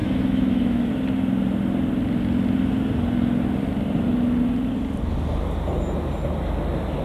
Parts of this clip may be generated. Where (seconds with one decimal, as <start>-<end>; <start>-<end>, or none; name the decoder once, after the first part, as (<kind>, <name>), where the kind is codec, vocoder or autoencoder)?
0.0-0.9 (autoencoder, DAC-VAE)